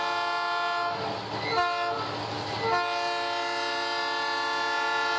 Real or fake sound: real